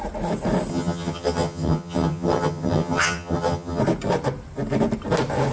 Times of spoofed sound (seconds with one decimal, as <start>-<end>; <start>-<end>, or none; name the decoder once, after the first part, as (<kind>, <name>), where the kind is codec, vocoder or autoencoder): 0.7-3.8 (vocoder, HiFi-GAN)